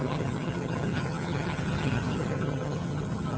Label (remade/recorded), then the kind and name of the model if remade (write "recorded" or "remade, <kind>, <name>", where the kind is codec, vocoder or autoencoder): remade, vocoder, HiFi-GAN